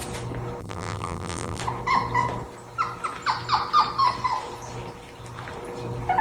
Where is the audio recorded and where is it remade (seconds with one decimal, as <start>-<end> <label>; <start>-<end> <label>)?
0.0-0.6 recorded; 0.6-1.6 remade; 1.6-6.2 recorded